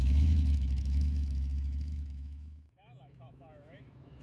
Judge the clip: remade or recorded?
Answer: remade